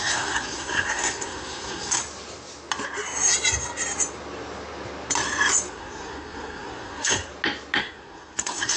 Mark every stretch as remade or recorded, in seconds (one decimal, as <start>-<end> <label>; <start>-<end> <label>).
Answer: 0.0-2.0 remade; 2.0-5.7 recorded; 5.7-7.3 remade; 7.3-7.8 recorded; 7.8-8.8 remade